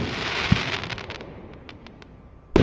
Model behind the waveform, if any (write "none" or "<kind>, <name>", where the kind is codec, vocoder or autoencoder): none